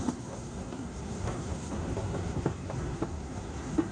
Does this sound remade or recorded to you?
remade